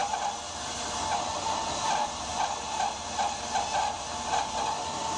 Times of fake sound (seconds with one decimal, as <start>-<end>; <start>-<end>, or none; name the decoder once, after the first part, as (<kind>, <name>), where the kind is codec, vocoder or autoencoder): none